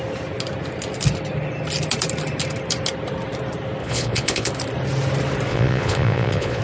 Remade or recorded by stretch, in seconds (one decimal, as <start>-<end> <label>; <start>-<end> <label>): 0.0-3.8 recorded; 3.8-4.5 remade; 4.5-5.5 recorded; 5.5-6.6 remade